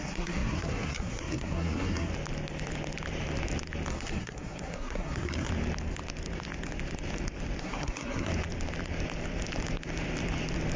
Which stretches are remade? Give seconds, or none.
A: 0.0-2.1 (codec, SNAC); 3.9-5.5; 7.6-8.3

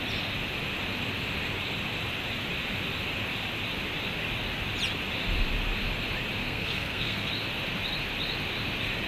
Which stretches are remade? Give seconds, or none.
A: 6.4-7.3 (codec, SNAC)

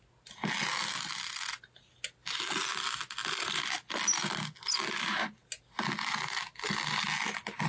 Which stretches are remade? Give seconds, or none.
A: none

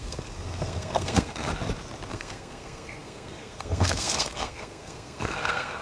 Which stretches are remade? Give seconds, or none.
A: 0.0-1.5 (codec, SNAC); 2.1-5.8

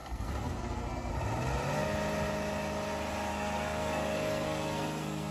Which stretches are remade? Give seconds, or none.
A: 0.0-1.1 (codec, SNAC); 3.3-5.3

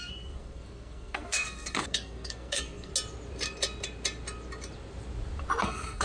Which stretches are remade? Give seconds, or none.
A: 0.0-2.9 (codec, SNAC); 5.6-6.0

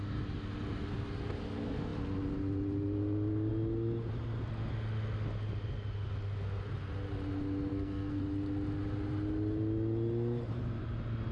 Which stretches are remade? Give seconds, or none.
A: 7.7-8.2 (codec, SNAC)

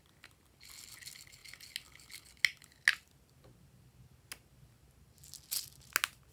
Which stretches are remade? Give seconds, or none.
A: none